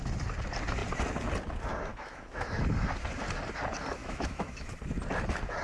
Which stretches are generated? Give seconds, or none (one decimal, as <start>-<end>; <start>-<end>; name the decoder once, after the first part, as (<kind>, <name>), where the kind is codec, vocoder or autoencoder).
1.9-2.6 (autoencoder, DAC-VAE); 4.0-4.7